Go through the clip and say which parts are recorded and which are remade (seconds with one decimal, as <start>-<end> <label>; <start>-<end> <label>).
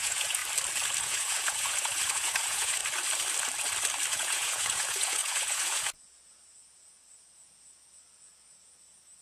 0.0-0.4 remade; 0.4-1.0 recorded; 1.0-2.8 remade; 2.8-4.1 recorded; 4.1-9.2 remade